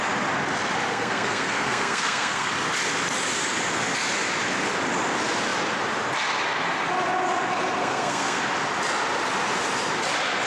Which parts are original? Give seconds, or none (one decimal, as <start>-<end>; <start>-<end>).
0.0-0.9; 2.5-7.8; 8.4-10.5